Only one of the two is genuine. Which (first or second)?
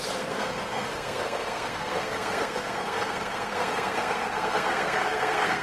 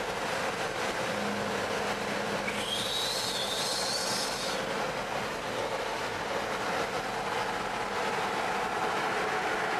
second